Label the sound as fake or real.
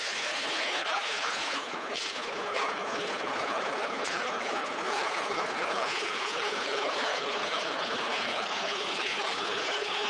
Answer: fake